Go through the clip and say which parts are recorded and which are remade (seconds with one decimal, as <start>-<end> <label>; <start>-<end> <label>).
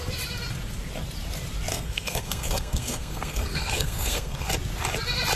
0.0-1.7 recorded; 1.7-4.5 remade; 4.5-5.4 recorded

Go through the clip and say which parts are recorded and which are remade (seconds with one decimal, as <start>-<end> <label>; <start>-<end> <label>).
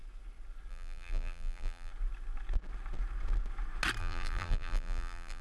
0.0-0.7 recorded; 0.7-1.9 remade; 1.9-4.0 recorded; 4.0-5.4 remade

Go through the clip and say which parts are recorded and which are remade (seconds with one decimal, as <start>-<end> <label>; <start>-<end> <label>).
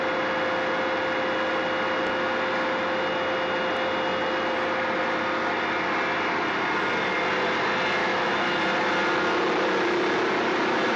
0.0-8.0 recorded; 8.0-8.6 remade; 8.6-11.0 recorded